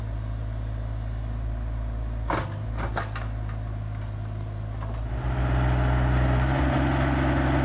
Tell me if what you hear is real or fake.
real